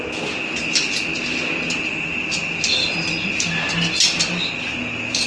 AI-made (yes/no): no